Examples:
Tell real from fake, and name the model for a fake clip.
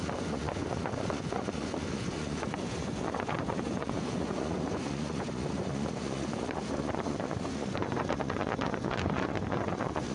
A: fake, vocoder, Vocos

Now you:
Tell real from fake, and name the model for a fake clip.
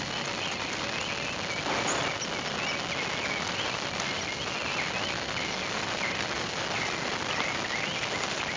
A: real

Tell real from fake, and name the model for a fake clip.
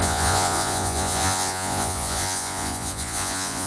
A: fake, vocoder, Vocos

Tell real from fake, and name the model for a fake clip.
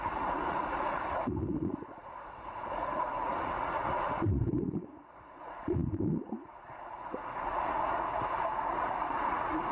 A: fake, vocoder, Vocos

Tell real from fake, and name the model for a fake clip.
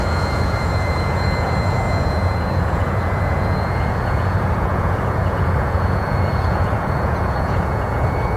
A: fake, vocoder, Vocos